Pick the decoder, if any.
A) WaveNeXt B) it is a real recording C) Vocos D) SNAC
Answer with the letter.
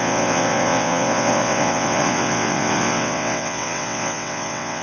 A